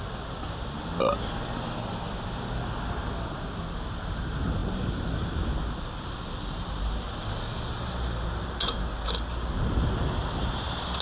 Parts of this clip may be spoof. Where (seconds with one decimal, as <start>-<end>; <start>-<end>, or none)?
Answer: none